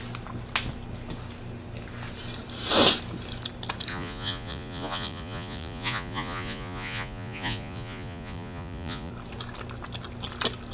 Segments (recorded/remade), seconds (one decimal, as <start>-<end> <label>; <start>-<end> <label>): 0.0-3.9 recorded; 3.9-9.1 remade; 9.1-10.7 recorded